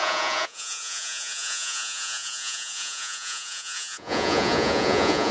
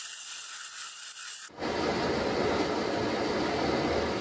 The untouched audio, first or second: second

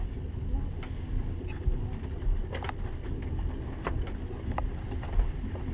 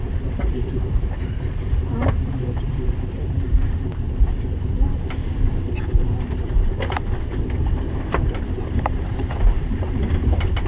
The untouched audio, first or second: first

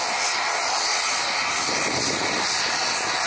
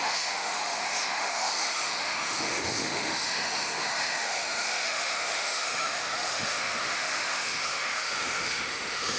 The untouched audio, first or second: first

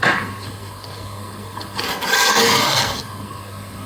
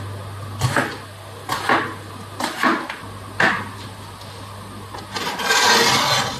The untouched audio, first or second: second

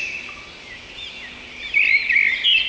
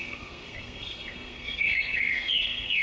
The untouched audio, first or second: first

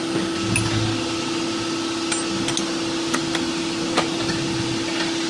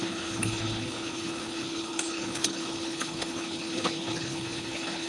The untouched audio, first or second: first